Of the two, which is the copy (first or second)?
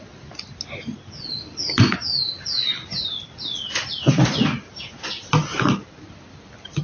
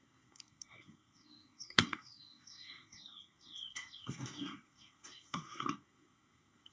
second